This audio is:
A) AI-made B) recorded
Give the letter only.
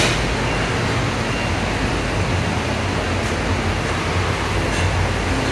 B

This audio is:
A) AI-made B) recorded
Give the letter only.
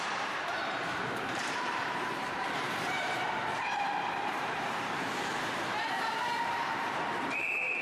A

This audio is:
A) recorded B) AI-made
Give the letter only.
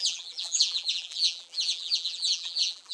B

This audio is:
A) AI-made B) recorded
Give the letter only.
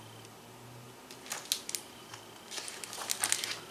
B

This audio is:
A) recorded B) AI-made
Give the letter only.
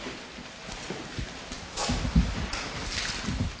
B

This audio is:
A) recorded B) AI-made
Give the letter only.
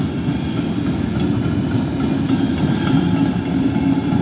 A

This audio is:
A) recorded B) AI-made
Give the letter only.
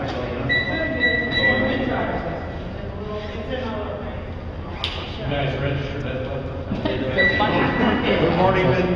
A